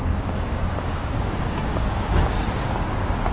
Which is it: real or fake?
fake